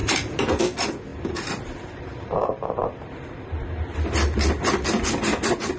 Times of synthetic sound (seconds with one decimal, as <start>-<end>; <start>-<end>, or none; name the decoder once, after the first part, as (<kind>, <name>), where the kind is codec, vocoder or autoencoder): 0.0-0.6 (vocoder, BigVGAN v2); 1.1-4.0

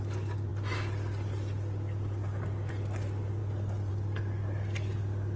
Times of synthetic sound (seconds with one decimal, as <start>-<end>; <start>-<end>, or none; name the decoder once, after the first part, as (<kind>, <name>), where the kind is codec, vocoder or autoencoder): none